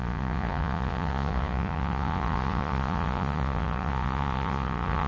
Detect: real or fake fake